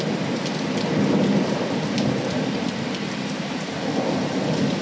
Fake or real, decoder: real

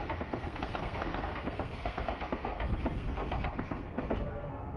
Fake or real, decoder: fake, codec, SNAC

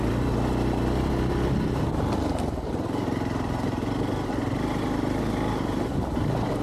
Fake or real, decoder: real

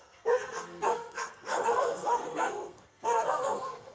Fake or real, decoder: fake, codec, SNAC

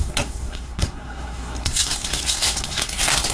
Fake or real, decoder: fake, codec, SNAC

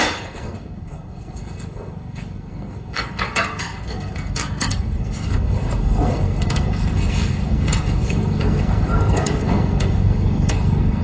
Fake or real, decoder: fake, codec, SNAC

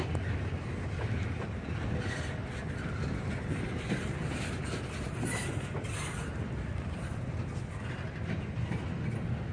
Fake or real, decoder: real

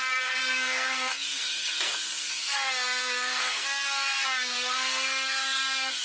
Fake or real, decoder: fake, codec, SNAC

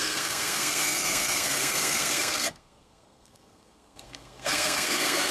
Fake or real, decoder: fake, codec, SNAC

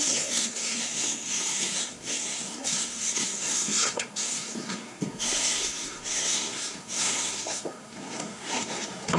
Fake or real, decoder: fake, codec, SNAC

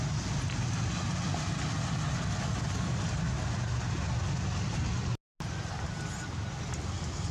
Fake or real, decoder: real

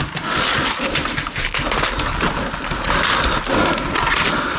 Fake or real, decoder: real